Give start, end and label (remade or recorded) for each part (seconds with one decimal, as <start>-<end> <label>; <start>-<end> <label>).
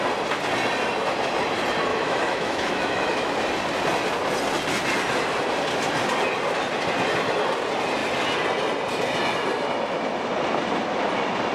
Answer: 0.0-1.9 recorded; 1.9-3.3 remade; 3.3-11.5 recorded